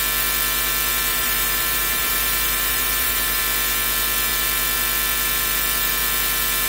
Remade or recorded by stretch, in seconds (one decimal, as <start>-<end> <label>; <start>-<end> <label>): 0.0-1.1 recorded; 1.1-3.4 remade; 3.4-6.7 recorded